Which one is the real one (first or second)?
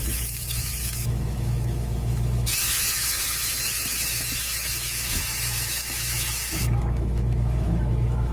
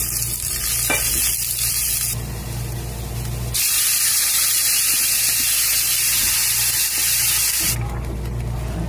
second